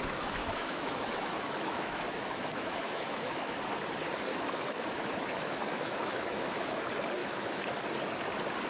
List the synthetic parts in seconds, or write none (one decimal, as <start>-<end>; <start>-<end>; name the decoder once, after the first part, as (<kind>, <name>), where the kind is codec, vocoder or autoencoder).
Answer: 0.4-3.6 (autoencoder, DAC-VAE); 4.3-6.8; 7.2-7.8